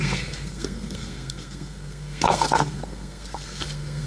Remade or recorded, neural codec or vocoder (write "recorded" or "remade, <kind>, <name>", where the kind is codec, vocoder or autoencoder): remade, codec, SNAC